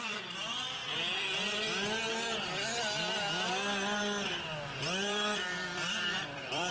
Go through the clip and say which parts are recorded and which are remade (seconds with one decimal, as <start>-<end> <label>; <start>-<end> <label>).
0.0-0.8 remade; 0.8-4.8 recorded; 4.8-6.7 remade